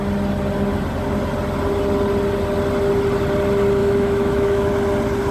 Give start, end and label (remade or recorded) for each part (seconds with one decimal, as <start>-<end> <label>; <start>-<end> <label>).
0.0-3.8 recorded; 3.8-4.7 remade; 4.7-5.3 recorded